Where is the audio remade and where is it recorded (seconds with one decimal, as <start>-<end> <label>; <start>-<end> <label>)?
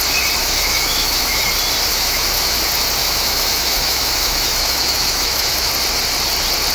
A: 0.0-0.4 recorded; 0.4-1.4 remade; 1.4-1.9 recorded; 1.9-2.6 remade; 2.6-3.0 recorded; 3.0-5.7 remade; 5.7-6.7 recorded